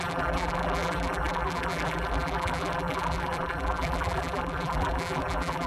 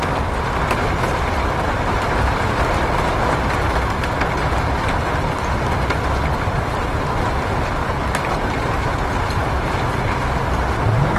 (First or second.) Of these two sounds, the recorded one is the second